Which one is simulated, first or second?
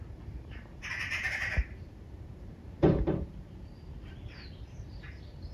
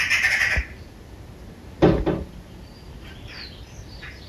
first